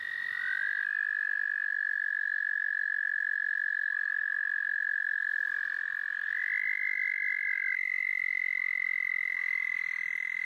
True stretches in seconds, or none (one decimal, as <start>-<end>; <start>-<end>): 0.0-4.2; 8.1-10.4